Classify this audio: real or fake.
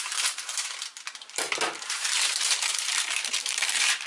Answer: fake